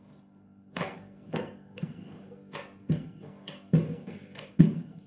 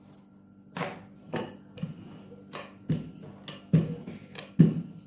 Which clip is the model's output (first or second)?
first